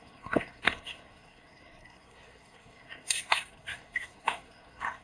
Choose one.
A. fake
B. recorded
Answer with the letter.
A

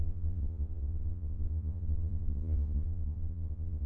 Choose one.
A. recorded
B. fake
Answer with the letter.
B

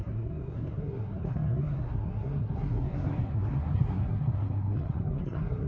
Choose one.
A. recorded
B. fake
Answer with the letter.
B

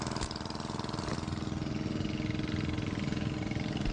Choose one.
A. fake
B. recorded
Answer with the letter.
B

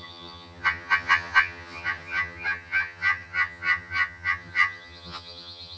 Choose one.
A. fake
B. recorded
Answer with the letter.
A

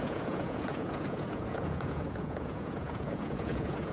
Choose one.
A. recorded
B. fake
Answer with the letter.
B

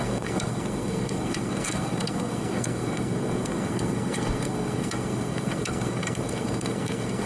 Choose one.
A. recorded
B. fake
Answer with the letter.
B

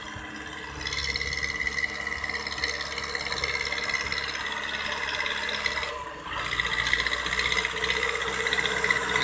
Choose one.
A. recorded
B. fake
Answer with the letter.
A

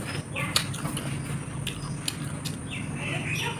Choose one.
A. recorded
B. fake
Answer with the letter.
A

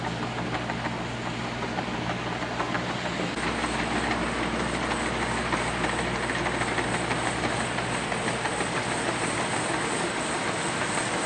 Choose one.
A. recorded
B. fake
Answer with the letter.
A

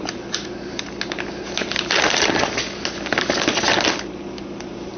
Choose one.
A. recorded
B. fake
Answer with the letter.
A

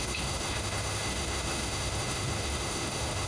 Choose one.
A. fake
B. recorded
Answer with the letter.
A